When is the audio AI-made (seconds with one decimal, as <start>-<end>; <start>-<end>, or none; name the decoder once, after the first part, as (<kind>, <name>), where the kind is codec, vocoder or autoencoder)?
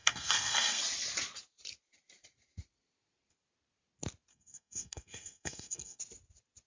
0.0-0.8 (codec, SNAC); 4.3-6.0